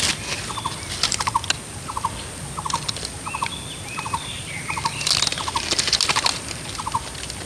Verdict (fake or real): real